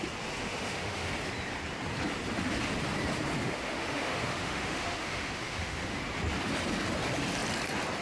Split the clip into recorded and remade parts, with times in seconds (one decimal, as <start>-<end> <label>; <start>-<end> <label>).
0.0-0.4 recorded; 0.4-1.1 remade; 1.1-3.4 recorded; 3.4-6.0 remade; 6.0-8.0 recorded